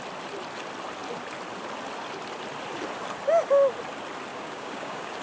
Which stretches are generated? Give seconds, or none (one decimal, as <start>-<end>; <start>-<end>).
4.3-5.2